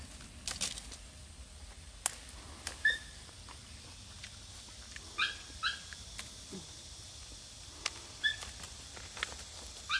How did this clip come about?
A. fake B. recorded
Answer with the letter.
B